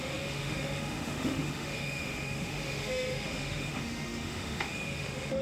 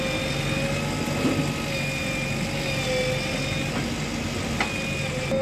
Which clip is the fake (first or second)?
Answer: first